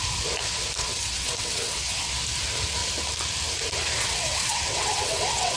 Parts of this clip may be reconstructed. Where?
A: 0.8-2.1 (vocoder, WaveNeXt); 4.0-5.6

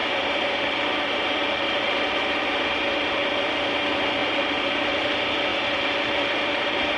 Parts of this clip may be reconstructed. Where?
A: 0.0-2.7 (vocoder, BigVGAN v2); 4.2-4.9; 5.5-7.0